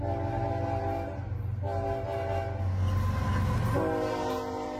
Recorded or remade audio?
recorded